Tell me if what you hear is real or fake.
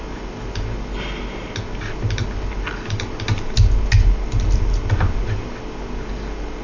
real